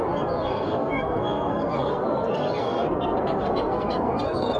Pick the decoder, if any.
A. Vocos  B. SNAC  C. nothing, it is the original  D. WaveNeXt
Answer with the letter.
B